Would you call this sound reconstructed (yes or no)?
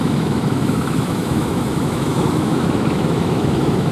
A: yes